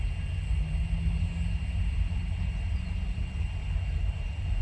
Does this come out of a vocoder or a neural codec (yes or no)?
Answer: no